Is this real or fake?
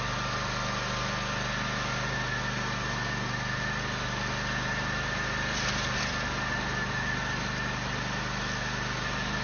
real